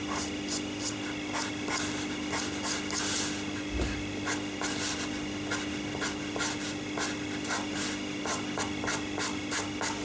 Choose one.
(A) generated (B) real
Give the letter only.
B